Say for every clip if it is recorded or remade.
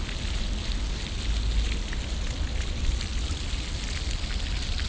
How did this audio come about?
recorded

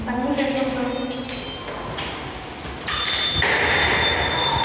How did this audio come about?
recorded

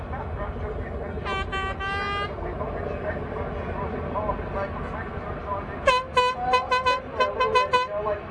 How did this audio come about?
recorded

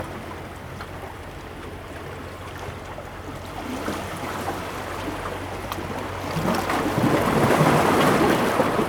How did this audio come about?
recorded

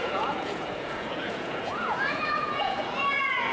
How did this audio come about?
remade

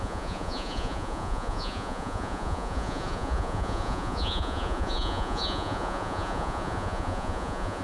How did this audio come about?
remade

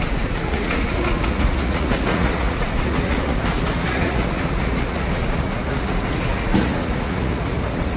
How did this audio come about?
remade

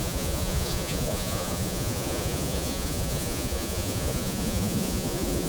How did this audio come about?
remade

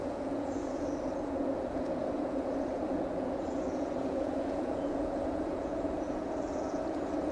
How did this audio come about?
remade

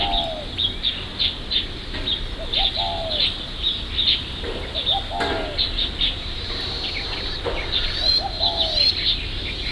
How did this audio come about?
recorded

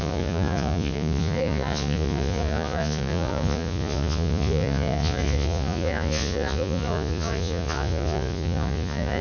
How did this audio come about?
remade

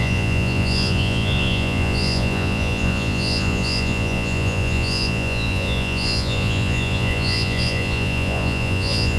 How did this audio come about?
remade